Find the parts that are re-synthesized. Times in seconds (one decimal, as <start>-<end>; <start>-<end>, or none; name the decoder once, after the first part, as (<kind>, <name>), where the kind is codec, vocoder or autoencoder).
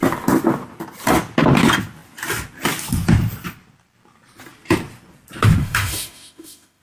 5.6-6.8 (autoencoder, DAC-VAE)